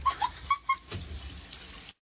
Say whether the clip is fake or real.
real